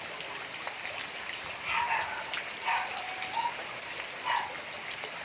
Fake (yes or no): no